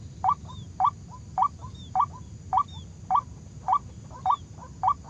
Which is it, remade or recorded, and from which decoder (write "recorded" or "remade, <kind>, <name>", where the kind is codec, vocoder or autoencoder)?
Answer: recorded